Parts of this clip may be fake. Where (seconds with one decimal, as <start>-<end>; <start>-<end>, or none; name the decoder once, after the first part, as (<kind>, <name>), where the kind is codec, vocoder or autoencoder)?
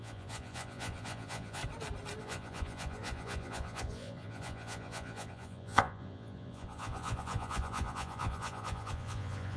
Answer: 0.0-1.6 (vocoder, Vocos); 2.2-9.6